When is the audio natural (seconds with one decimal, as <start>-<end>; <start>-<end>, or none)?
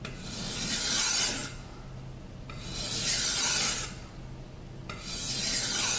0.0-6.0